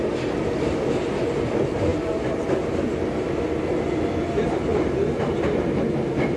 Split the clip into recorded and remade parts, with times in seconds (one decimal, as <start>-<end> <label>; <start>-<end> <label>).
0.0-6.4 recorded